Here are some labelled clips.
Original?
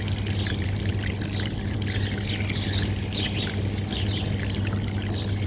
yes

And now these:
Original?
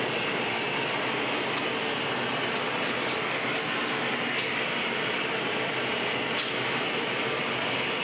yes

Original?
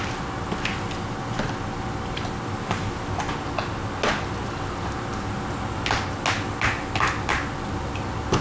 yes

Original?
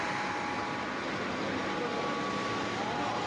yes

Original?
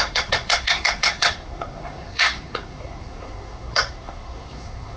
no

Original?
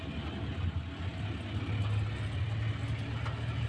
yes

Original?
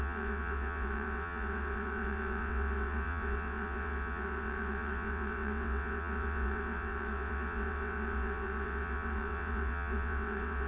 no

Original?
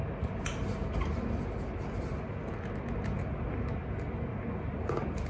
yes